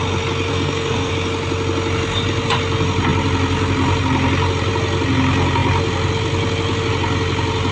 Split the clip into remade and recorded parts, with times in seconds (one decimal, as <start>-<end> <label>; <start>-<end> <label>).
0.0-0.5 recorded; 0.5-1.1 remade; 1.1-7.7 recorded